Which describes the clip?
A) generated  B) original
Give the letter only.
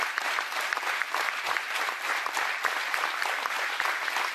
B